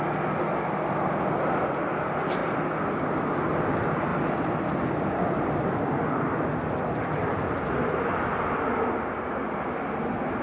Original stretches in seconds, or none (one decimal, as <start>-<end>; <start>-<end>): 0.0-10.4